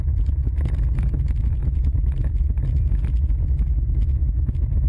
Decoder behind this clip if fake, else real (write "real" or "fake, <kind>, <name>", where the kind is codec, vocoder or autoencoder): real